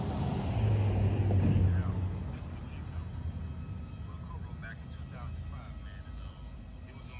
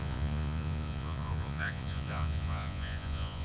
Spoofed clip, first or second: second